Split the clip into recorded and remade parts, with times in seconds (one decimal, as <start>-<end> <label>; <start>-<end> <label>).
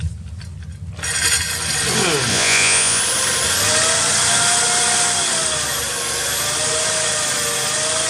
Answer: 0.0-2.3 recorded; 2.3-3.0 remade; 3.0-8.1 recorded